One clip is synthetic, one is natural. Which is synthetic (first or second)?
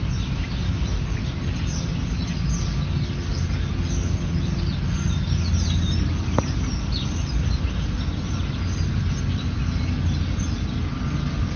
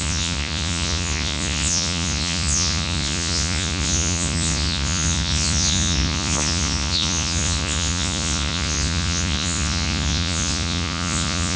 second